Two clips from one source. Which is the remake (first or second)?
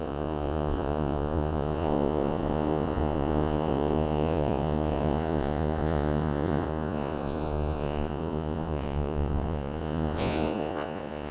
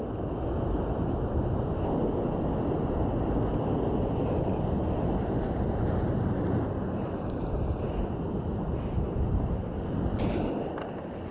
first